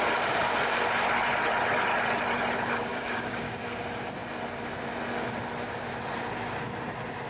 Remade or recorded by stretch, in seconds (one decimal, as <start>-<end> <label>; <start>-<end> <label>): 0.0-2.9 recorded; 2.9-3.8 remade; 3.8-7.3 recorded